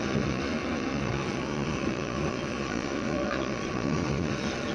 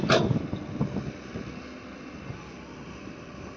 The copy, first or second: first